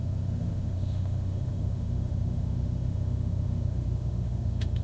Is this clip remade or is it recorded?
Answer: remade